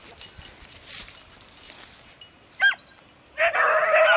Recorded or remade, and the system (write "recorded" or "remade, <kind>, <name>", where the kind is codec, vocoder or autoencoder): recorded